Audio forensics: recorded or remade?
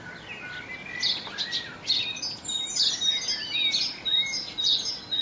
recorded